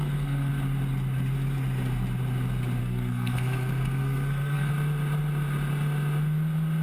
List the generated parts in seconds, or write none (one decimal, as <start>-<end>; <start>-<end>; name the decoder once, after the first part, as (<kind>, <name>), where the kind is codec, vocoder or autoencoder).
0.0-0.5 (codec, SNAC); 2.8-4.7